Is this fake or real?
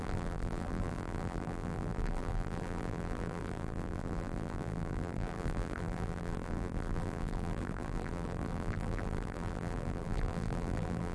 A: fake